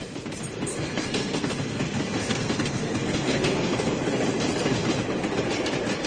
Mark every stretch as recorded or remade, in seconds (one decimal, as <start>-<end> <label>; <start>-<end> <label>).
0.0-0.7 recorded; 0.7-3.9 remade; 3.9-6.1 recorded